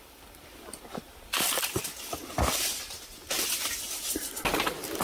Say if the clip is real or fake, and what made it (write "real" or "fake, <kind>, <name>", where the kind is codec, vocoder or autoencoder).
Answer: real